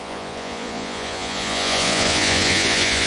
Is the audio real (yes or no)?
no